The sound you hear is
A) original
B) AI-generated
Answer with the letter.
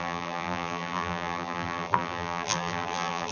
B